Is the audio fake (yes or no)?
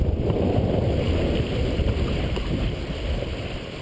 no